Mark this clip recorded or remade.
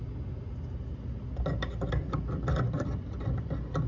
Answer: recorded